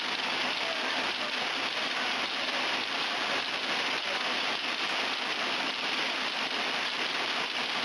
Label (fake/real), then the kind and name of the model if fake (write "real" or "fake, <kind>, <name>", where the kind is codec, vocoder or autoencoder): real